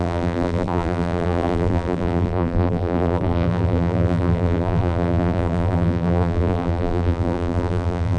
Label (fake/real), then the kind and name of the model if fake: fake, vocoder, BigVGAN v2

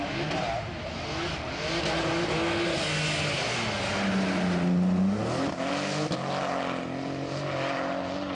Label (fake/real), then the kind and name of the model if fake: real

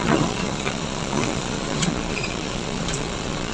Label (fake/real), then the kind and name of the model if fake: fake, vocoder, Vocos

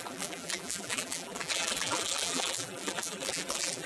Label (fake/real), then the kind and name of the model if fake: fake, vocoder, BigVGAN v2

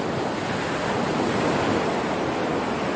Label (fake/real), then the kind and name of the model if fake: real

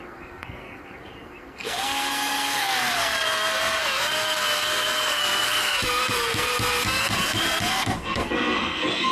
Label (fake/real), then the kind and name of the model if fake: fake, codec, SNAC